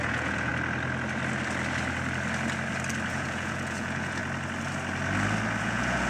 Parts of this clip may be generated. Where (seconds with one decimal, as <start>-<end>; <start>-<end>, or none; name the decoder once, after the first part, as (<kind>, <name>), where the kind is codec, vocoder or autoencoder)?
0.0-0.5 (vocoder, Vocos); 3.1-4.2; 5.6-6.1